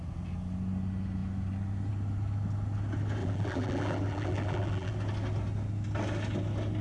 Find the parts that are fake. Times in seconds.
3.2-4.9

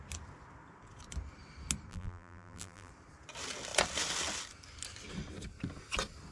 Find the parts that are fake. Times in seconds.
1.9-2.9

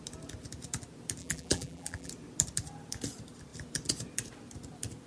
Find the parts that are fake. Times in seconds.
1.2-2.1

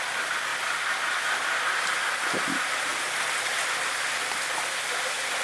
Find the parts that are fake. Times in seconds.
0.0-0.5; 1.9-5.4

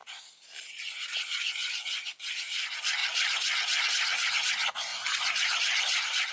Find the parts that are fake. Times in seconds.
4.9-6.3

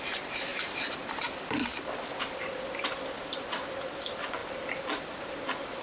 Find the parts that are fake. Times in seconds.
0.5-2.2; 4.4-5.2

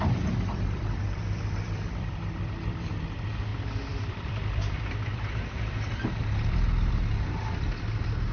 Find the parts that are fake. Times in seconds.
0.5-2.9; 3.5-6.9

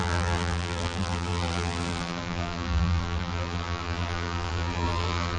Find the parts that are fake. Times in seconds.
0.0-5.4